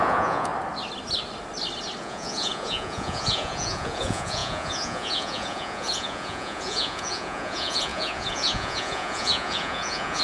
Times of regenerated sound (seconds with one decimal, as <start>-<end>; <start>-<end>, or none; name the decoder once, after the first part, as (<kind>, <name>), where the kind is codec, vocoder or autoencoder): 0.0-0.5 (vocoder, Vocos); 2.0-10.2